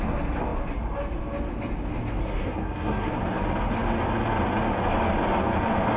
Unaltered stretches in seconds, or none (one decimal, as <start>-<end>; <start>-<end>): 0.0-2.2; 3.1-6.0